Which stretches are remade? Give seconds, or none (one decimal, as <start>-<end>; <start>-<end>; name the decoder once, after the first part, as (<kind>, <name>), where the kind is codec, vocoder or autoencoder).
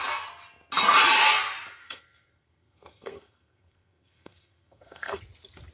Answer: 1.8-5.2 (codec, SNAC)